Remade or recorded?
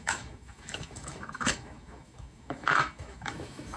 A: remade